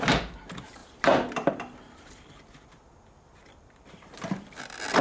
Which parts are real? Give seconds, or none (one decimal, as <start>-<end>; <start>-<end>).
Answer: 0.0-0.8; 3.8-5.0